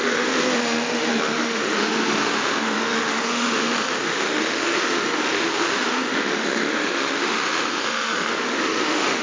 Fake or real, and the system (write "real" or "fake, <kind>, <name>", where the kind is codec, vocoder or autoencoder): fake, autoencoder, DAC-VAE